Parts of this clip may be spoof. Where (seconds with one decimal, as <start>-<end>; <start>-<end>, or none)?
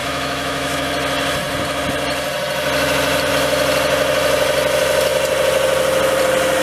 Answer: 0.0-0.9